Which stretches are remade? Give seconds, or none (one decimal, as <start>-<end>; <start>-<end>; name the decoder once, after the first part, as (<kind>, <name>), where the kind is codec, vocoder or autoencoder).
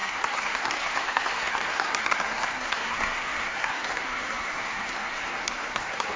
0.0-6.2 (codec, SNAC)